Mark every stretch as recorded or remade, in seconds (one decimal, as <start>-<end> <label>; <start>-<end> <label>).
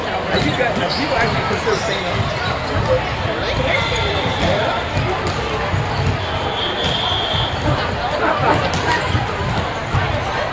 0.0-10.5 recorded